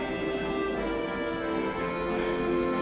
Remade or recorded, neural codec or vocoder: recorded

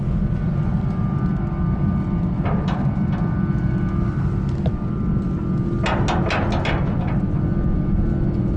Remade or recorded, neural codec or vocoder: recorded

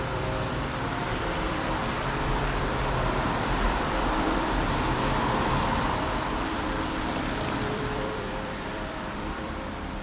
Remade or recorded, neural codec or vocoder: remade, vocoder, BigVGAN v2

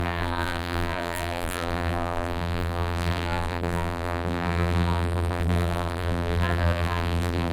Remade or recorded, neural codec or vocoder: remade, vocoder, BigVGAN v2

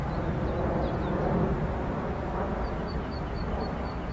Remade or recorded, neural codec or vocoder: recorded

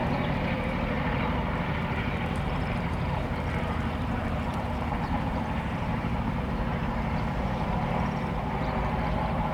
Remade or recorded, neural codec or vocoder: remade, vocoder, BigVGAN v2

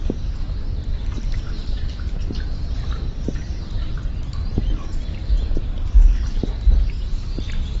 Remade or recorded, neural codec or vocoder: remade, vocoder, BigVGAN v2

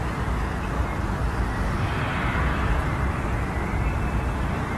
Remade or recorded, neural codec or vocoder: remade, vocoder, BigVGAN v2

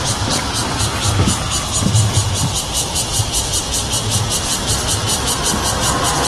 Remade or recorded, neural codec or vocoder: remade, vocoder, BigVGAN v2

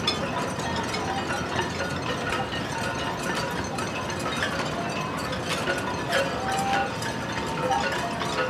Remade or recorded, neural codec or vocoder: recorded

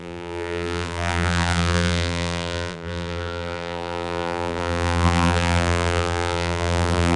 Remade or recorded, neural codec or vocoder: remade, vocoder, BigVGAN v2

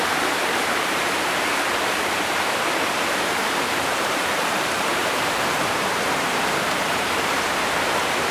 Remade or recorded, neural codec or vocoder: remade, vocoder, BigVGAN v2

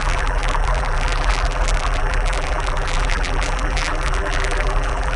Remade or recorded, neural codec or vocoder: remade, vocoder, BigVGAN v2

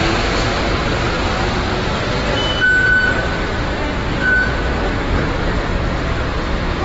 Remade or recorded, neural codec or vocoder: recorded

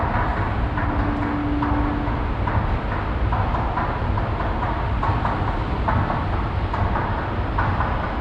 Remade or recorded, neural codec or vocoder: recorded